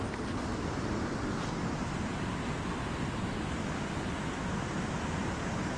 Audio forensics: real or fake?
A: real